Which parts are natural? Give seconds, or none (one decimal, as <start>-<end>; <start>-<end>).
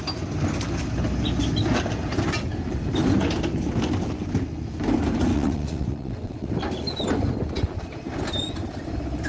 0.0-5.3; 6.5-9.3